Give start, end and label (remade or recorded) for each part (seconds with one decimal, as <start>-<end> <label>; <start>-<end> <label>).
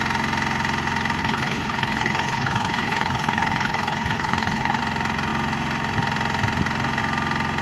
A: 0.0-1.2 recorded; 1.2-4.8 remade; 4.8-7.6 recorded